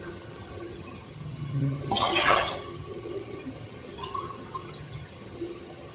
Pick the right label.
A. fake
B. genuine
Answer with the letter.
A